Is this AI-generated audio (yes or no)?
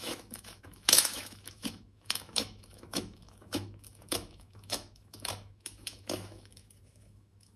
yes